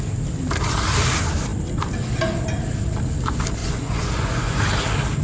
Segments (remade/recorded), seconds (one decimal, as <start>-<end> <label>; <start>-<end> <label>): 0.0-3.6 recorded; 3.6-4.6 remade; 4.6-5.2 recorded